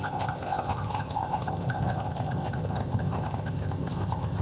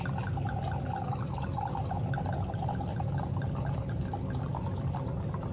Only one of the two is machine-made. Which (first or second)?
first